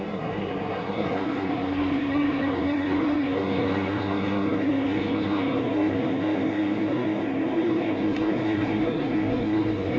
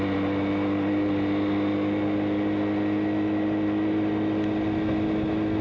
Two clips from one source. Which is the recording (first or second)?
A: second